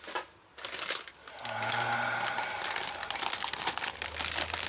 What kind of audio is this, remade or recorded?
recorded